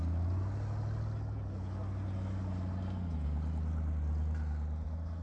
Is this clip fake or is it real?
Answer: real